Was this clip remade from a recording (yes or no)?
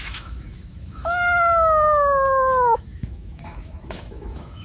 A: yes